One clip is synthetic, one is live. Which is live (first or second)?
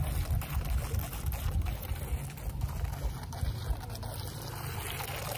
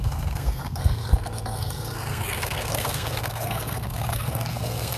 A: first